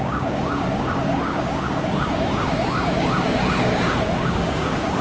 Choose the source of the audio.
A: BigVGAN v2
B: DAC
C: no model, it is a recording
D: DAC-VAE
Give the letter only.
B